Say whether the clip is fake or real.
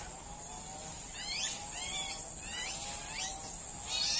real